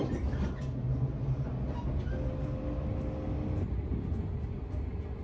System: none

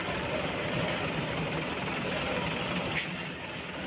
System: none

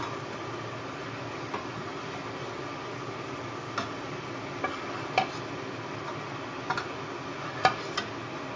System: none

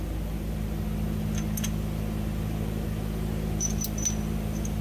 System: none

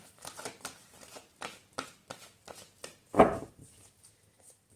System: none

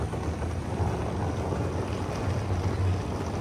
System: none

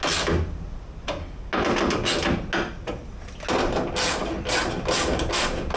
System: none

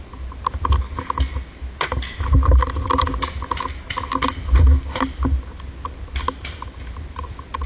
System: none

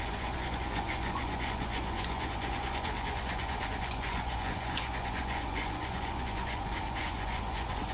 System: vocoder, Vocos